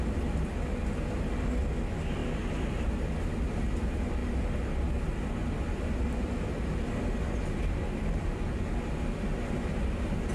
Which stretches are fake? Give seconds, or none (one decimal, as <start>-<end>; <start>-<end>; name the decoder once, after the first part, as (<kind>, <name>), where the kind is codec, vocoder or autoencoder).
none